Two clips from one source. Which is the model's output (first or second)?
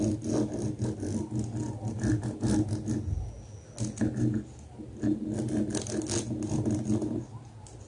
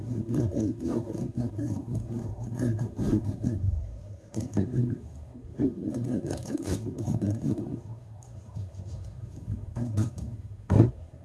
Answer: second